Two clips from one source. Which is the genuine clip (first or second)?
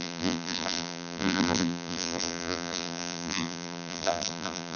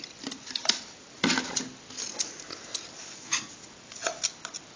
second